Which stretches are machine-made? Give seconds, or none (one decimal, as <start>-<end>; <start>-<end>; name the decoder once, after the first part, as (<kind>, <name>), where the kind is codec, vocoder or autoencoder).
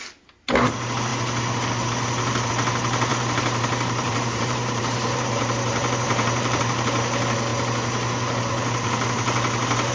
3.1-6.6 (vocoder, BigVGAN v2)